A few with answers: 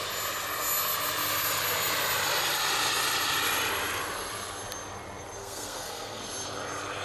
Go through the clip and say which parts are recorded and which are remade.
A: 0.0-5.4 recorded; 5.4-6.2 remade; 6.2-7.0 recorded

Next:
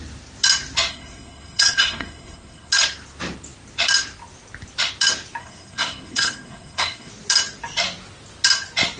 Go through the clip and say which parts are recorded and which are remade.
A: 0.0-0.9 recorded; 0.9-2.7 remade; 2.7-5.4 recorded; 5.4-7.1 remade; 7.1-9.0 recorded

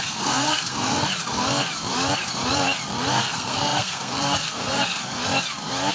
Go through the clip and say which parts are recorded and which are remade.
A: 0.0-1.1 remade; 1.1-3.2 recorded; 3.2-5.0 remade; 5.0-5.9 recorded

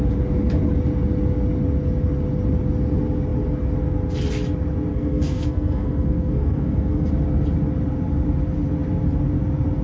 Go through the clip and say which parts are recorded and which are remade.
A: 0.0-4.9 recorded; 4.9-7.1 remade; 7.1-9.8 recorded

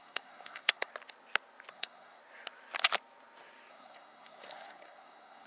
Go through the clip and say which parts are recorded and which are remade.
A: 0.0-0.9 remade; 0.9-1.7 recorded; 1.7-2.2 remade; 2.2-3.7 recorded; 3.7-5.5 remade